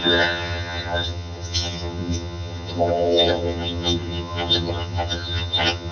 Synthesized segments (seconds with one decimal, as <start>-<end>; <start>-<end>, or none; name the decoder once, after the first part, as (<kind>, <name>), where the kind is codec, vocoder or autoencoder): 0.0-5.9 (vocoder, HiFi-GAN)